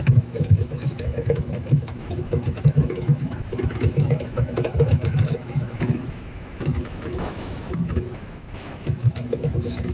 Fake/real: fake